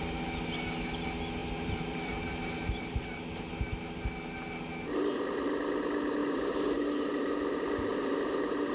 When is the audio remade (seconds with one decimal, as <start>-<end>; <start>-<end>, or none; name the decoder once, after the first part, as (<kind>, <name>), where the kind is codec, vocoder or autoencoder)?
1.4-3.5 (vocoder, BigVGAN v2); 6.2-7.1; 7.9-8.7